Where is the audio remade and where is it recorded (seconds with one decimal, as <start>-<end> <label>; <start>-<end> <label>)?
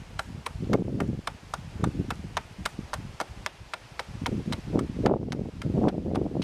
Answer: 0.0-6.4 recorded